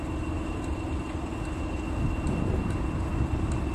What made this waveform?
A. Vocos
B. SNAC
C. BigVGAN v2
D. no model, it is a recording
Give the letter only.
D